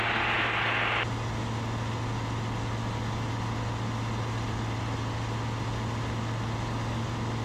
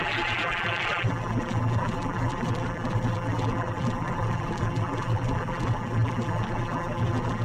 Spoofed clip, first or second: second